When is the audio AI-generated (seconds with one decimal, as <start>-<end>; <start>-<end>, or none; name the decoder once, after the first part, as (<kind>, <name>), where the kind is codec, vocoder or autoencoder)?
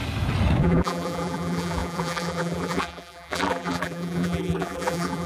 0.6-5.3 (vocoder, BigVGAN v2)